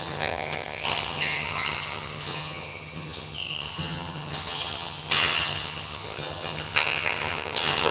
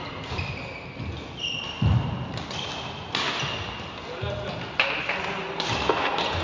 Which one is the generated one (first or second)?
first